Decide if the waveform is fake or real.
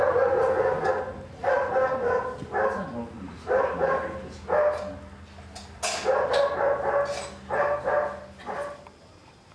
real